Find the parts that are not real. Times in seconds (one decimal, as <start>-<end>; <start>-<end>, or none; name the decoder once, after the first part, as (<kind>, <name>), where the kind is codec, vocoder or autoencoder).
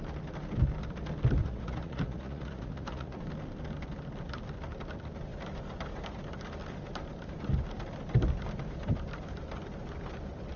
1.4-3.2 (vocoder, Vocos)